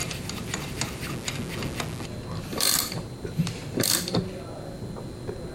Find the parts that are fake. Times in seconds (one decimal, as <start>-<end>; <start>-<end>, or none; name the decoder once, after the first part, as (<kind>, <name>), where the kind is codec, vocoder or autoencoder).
0.0-1.1 (vocoder, BigVGAN v2); 2.5-4.2